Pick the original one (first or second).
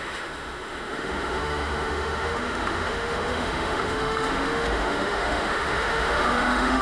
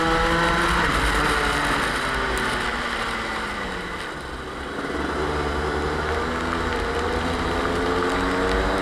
second